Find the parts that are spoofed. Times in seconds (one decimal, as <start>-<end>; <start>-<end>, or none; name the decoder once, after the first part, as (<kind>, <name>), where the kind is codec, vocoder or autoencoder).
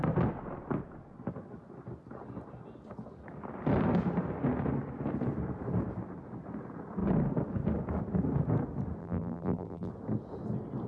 9.0-9.9 (vocoder, BigVGAN v2)